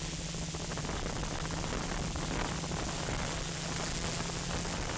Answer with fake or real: real